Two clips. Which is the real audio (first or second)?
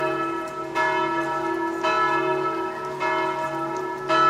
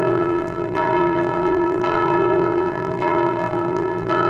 first